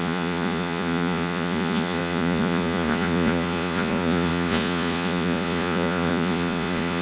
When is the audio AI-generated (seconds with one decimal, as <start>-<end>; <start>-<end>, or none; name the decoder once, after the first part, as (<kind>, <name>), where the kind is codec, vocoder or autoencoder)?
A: 0.0-7.0 (vocoder, Vocos)